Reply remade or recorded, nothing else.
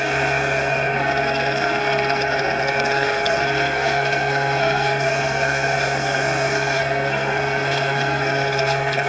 remade